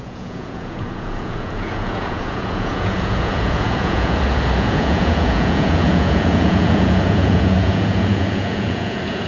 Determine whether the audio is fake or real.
fake